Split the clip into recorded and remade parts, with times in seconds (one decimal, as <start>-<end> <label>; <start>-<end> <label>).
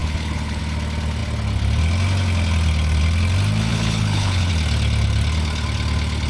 0.0-0.6 remade; 0.6-3.7 recorded; 3.7-4.5 remade; 4.5-6.3 recorded